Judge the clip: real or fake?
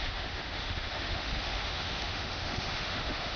fake